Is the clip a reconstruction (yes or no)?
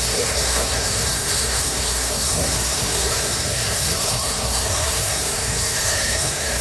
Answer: yes